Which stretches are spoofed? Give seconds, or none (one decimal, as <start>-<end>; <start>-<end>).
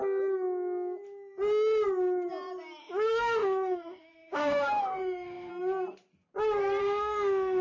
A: 2.8-5.5; 6.8-7.6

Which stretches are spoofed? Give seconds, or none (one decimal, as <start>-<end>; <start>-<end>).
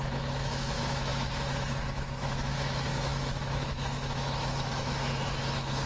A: 0.0-5.9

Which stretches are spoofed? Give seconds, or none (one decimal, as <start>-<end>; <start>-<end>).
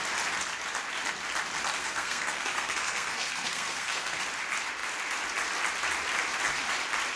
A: 1.8-4.2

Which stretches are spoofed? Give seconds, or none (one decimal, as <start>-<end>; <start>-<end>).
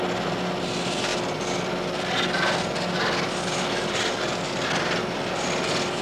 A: none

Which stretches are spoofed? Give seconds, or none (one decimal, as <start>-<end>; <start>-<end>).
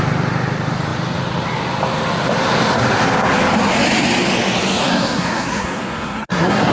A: 4.8-6.7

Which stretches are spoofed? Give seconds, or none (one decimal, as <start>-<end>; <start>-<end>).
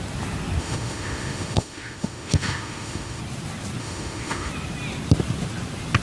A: 0.6-3.2; 3.8-4.5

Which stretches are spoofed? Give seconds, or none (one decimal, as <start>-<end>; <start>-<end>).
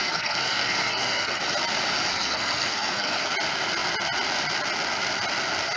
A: 0.0-1.4; 2.1-3.3